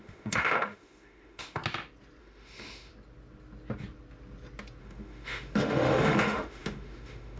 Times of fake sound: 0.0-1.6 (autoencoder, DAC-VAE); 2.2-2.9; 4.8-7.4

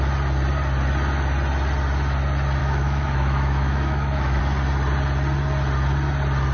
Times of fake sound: 2.6-4.4 (autoencoder, DAC-VAE)

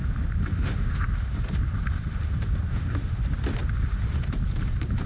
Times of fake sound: 0.5-1.1 (autoencoder, DAC-VAE); 2.7-3.2